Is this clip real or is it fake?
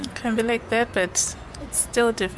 fake